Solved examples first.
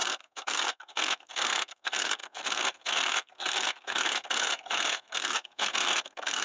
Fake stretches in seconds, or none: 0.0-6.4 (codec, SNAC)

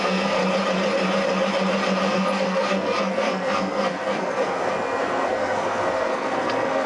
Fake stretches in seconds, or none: 0.0-0.4 (codec, SNAC); 2.1-6.9